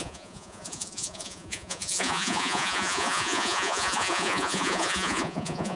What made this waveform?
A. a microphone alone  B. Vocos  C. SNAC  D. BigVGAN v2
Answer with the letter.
B